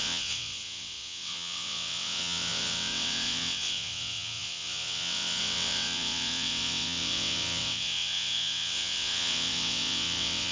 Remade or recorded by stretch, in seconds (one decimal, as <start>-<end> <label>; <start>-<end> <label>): 0.0-10.5 remade